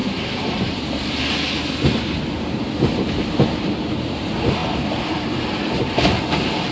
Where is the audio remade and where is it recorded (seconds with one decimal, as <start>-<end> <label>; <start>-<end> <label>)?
0.0-4.6 recorded; 4.6-5.4 remade; 5.4-6.7 recorded